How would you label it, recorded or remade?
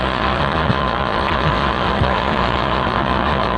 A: remade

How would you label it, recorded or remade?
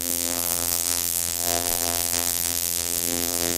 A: remade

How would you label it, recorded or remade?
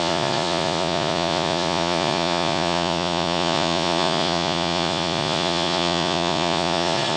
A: remade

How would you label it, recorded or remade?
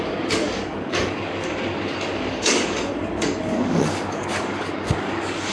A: remade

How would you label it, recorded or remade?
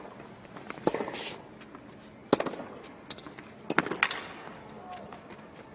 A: recorded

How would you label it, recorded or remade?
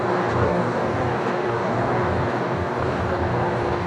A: remade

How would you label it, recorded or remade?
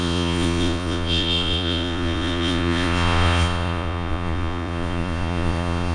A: remade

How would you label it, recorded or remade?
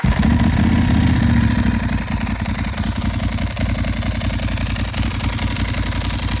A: recorded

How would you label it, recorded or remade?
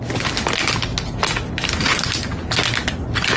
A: recorded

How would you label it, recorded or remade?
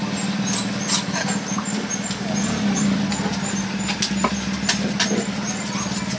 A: recorded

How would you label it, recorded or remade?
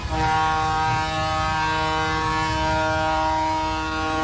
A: recorded